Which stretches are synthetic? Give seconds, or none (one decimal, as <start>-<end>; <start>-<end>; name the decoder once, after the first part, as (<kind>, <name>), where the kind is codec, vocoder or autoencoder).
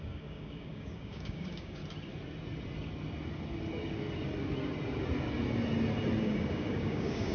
0.0-1.8 (codec, DAC); 6.2-7.3